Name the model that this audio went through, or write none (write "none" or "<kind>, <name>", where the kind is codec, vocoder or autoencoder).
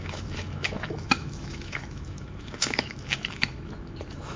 autoencoder, DAC-VAE